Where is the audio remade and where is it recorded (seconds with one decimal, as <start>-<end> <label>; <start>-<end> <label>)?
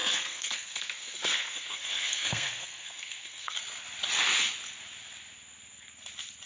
0.0-3.6 remade; 3.6-6.5 recorded